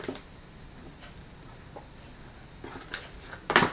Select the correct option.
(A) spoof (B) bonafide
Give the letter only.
B